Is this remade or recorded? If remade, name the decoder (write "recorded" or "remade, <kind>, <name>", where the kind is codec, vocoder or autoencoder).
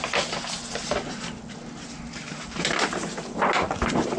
recorded